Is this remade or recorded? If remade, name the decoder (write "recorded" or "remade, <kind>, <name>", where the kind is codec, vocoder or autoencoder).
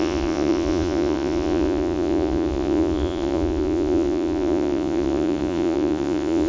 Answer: remade, vocoder, Vocos